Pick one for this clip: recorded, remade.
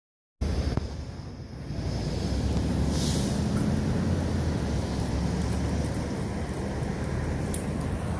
recorded